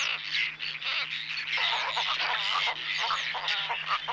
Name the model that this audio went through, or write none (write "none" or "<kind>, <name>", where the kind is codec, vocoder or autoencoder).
none